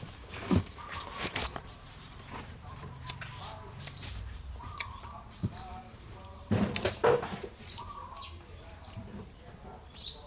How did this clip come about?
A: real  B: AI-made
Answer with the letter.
B